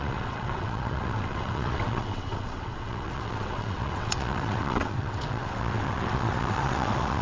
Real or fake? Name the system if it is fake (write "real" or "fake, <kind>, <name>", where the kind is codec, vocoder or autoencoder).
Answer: fake, vocoder, WaveNeXt